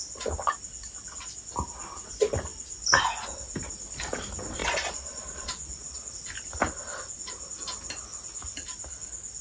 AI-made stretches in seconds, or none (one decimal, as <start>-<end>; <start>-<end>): 4.6-6.1